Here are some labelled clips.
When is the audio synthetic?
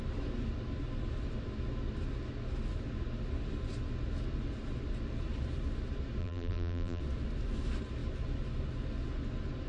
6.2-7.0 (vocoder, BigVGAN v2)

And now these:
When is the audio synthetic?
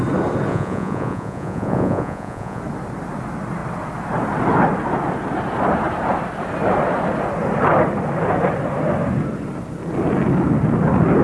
0.5-2.6 (vocoder, Vocos)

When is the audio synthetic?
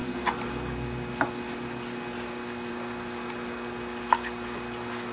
none